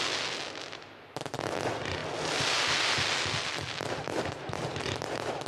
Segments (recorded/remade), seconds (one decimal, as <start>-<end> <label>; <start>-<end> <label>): 0.0-5.5 recorded